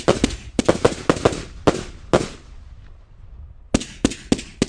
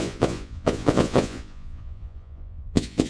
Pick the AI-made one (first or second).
second